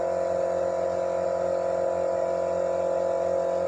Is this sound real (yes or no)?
yes